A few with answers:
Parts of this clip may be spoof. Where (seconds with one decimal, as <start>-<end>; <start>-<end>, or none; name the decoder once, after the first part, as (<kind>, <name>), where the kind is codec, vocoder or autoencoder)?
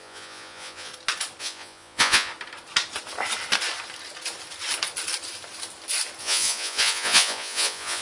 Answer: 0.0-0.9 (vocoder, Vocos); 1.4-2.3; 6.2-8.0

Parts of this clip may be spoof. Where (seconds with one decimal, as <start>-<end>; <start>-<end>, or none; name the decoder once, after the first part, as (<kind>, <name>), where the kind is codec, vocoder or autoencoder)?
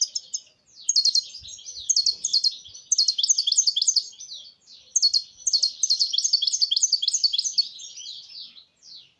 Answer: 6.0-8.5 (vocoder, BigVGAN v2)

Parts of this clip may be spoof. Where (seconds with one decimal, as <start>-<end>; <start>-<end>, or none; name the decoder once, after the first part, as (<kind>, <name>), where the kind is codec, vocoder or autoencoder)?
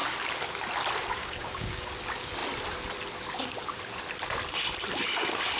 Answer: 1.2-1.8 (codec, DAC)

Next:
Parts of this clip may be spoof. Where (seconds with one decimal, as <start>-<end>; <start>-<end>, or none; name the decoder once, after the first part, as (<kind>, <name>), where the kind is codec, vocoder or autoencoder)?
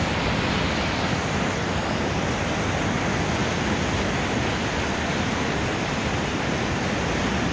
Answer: 1.6-2.2 (vocoder, BigVGAN v2); 3.4-6.8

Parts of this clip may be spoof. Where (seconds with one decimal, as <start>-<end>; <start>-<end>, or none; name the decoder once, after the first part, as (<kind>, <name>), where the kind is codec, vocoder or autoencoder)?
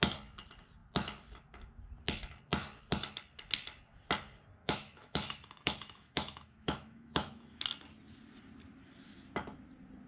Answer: 4.6-7.6 (autoencoder, DAC-VAE)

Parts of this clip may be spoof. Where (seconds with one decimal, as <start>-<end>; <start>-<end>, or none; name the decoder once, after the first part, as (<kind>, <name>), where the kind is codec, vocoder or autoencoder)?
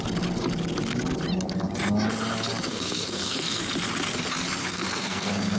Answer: 2.7-3.6 (codec, SNAC); 4.6-5.6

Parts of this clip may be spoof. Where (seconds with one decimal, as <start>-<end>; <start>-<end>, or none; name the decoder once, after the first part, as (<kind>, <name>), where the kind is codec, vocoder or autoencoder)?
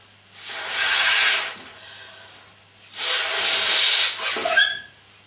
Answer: 0.8-1.3 (vocoder, HiFi-GAN)